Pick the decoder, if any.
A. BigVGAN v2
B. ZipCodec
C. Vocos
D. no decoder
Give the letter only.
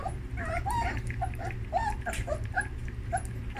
A